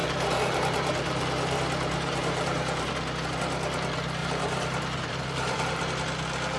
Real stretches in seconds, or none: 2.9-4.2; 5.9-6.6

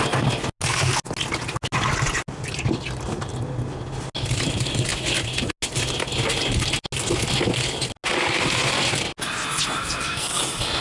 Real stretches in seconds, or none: 0.0-9.8; 10.4-10.8

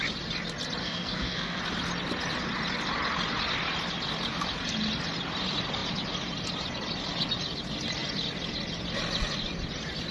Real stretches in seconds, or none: 0.0-0.8; 1.6-10.1

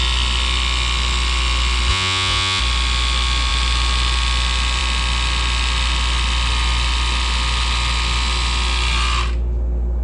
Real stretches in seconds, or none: 0.0-1.9; 2.6-10.0

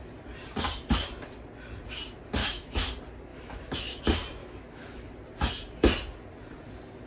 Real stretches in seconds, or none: 0.0-2.4; 2.9-3.3; 4.0-4.4; 5.1-7.1